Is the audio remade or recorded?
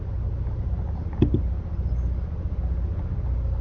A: recorded